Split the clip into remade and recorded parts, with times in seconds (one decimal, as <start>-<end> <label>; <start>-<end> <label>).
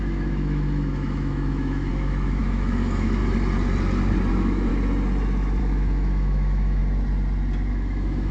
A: 0.0-3.2 remade; 3.2-4.3 recorded; 4.3-4.7 remade; 4.7-5.6 recorded; 5.6-6.8 remade; 6.8-7.7 recorded; 7.7-8.3 remade